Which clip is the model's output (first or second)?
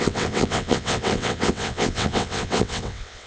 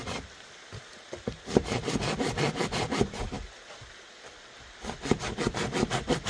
first